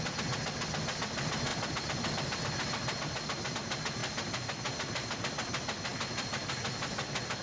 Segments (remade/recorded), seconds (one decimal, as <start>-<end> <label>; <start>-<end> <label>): 0.0-7.4 recorded